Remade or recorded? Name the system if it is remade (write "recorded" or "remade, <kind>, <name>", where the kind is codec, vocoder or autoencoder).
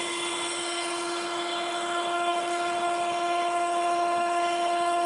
remade, codec, HILCodec